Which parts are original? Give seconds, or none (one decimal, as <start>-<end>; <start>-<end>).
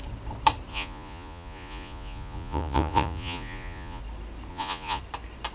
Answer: 0.0-0.7; 4.0-4.5; 5.0-5.5